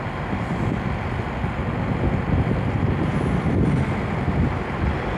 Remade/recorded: recorded